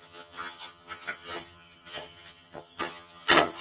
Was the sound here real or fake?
fake